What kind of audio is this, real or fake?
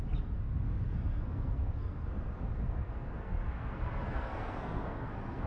fake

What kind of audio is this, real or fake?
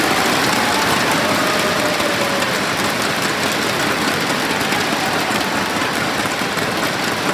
real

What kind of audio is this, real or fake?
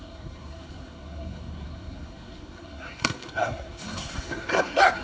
fake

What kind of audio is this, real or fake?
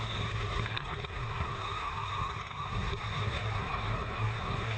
fake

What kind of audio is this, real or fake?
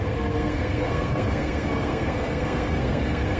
fake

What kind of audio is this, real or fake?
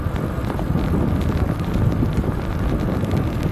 real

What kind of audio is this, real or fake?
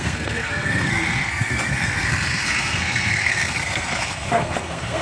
fake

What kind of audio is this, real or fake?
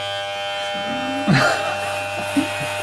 real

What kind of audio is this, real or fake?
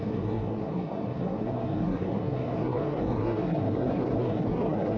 fake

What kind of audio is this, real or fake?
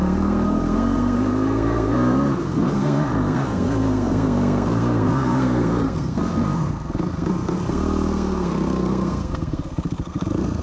fake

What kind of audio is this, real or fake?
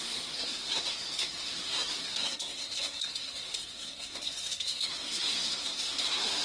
fake